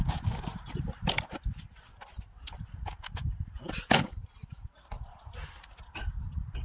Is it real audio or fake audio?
real